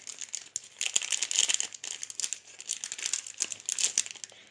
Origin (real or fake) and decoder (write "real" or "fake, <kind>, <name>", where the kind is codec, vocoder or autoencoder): real